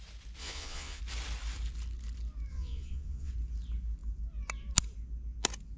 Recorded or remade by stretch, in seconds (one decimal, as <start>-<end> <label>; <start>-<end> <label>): 0.0-0.4 recorded; 0.4-1.0 remade; 1.0-2.5 recorded; 2.5-3.3 remade; 3.3-5.8 recorded